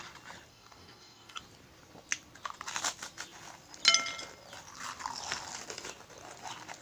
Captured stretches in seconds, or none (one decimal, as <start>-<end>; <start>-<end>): 0.0-0.5; 1.4-6.8